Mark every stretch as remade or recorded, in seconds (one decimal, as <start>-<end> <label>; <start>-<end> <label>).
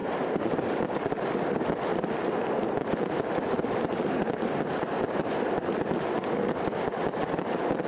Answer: 0.0-0.6 remade; 0.6-7.9 recorded